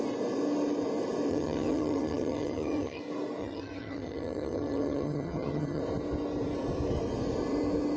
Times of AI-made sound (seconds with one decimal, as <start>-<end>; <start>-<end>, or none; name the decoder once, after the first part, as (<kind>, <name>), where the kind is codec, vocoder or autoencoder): 1.3-3.0 (vocoder, HiFi-GAN); 3.4-5.8